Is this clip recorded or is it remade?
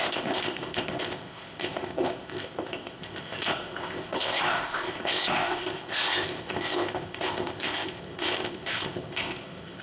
remade